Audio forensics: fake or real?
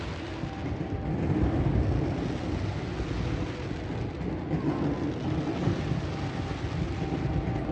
real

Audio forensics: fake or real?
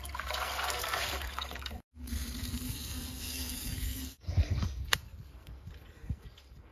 fake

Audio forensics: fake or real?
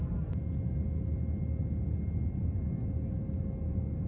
real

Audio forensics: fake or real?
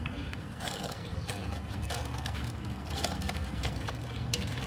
fake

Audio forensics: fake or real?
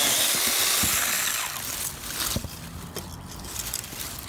real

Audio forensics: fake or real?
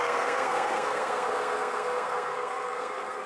fake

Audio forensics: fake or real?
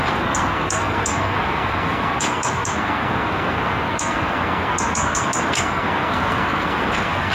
fake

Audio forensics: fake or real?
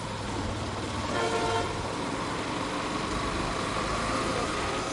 real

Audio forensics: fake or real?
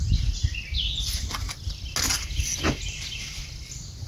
real